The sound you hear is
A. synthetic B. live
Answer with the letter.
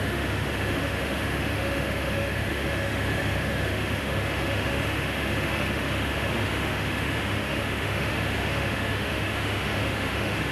A